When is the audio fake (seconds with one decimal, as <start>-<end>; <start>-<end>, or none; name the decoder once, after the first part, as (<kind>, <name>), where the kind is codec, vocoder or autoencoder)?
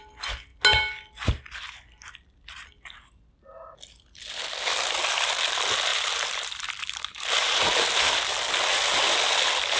5.9-7.7 (vocoder, BigVGAN v2)